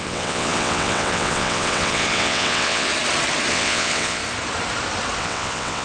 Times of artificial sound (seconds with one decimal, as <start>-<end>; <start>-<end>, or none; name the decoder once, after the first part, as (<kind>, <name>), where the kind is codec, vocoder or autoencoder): 0.0-2.9 (vocoder, WaveNeXt); 3.5-4.2; 5.2-5.8